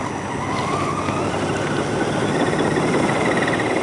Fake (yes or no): no